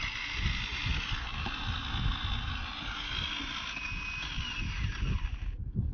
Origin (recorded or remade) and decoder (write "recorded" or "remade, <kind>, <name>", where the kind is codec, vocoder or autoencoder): recorded